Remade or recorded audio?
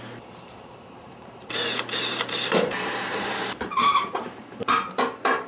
remade